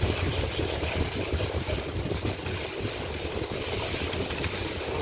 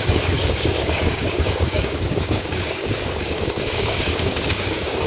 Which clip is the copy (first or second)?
second